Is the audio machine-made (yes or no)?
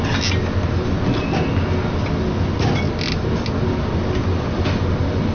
no